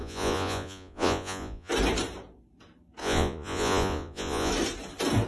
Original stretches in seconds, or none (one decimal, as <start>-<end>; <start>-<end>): 1.7-3.0; 4.5-5.3